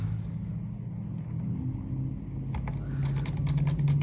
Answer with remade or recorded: recorded